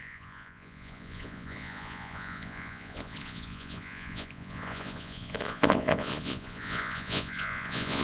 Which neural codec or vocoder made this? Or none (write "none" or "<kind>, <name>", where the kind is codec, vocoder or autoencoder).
vocoder, Vocos